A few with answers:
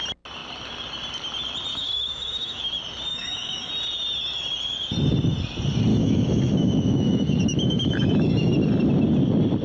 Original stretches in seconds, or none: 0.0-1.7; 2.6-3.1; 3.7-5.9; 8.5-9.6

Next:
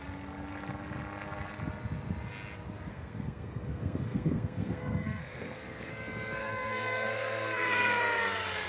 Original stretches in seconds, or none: 0.0-2.9; 5.9-6.4; 8.0-8.7

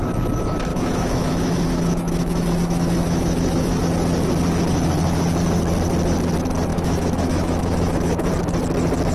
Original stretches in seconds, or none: 0.0-0.7; 3.8-6.7; 8.3-9.1

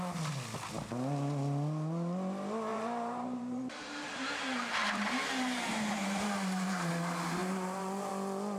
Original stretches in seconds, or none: 0.0-2.7; 6.9-7.4; 8.1-8.6

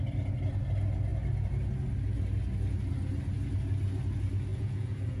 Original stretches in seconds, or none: 0.0-4.5

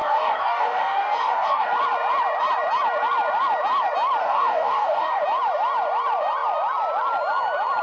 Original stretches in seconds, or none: 1.7-4.2; 5.2-7.8